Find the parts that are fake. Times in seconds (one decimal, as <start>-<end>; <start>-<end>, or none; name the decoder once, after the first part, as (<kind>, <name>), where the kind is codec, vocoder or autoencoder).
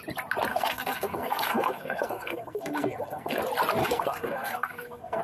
0.5-3.4 (codec, SNAC); 3.8-5.2